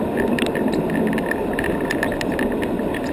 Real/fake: real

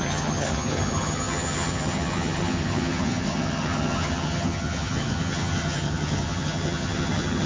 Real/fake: fake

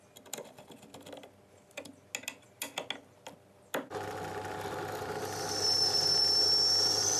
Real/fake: real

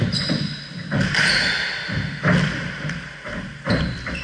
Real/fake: real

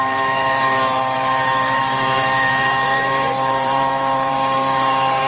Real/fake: fake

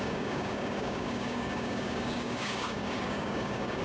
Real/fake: fake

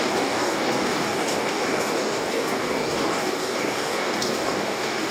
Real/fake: fake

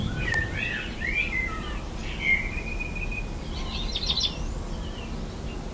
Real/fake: real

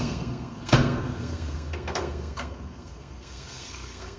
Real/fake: fake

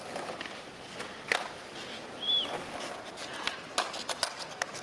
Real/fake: real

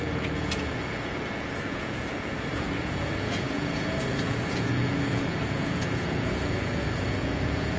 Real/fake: fake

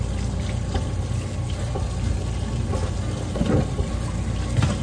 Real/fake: real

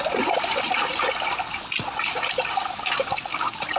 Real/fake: real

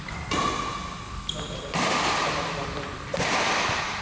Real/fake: real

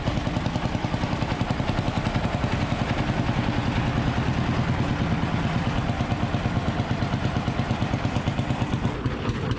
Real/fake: real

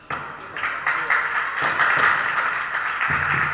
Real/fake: real